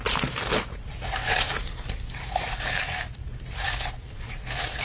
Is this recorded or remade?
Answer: remade